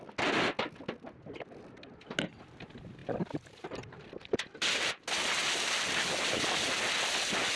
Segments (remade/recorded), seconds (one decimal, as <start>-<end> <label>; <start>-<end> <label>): 0.0-3.0 recorded; 3.0-4.1 remade; 4.1-7.6 recorded